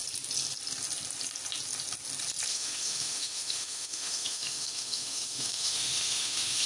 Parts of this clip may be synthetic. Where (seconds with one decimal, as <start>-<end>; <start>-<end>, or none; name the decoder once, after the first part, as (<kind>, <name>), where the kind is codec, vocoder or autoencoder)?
2.5-6.7 (autoencoder, DAC-VAE)